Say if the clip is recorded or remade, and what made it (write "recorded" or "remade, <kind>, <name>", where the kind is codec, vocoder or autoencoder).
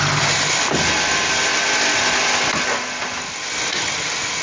recorded